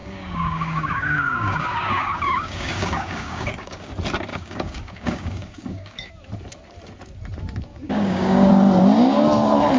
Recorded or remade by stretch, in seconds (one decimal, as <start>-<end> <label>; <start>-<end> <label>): 0.0-3.9 remade; 3.9-4.3 recorded; 4.3-6.1 remade; 6.1-7.7 recorded; 7.7-8.5 remade; 8.5-9.8 recorded